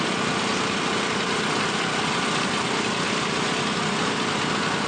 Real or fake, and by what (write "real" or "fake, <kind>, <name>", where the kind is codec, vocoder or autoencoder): real